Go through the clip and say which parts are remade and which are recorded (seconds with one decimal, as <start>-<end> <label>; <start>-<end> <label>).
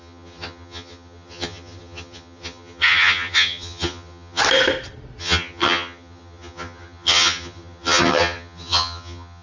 0.0-4.4 remade; 4.4-5.2 recorded; 5.2-9.4 remade